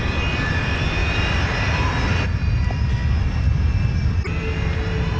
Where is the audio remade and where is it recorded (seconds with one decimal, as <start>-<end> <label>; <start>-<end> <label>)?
0.0-5.2 recorded